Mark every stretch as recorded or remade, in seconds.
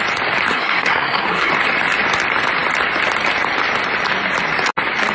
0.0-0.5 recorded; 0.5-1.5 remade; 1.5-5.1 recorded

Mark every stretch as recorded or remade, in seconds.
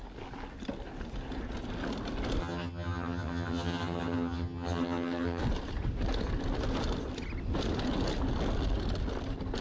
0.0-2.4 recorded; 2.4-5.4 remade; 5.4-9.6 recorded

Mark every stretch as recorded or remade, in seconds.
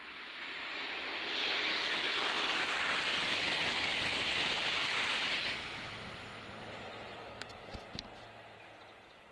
0.0-1.7 recorded; 1.7-2.6 remade; 2.6-3.1 recorded; 3.1-4.2 remade; 4.2-7.2 recorded; 7.2-7.7 remade; 7.7-9.3 recorded